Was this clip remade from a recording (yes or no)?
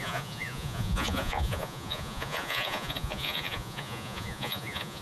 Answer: yes